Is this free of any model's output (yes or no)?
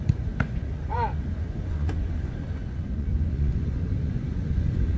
no